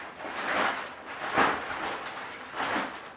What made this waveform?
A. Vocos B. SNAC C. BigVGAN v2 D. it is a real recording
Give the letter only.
D